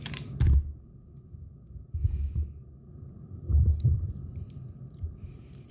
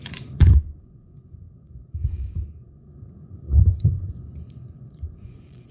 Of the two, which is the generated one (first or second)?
second